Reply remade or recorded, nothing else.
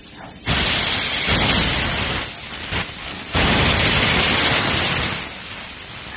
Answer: remade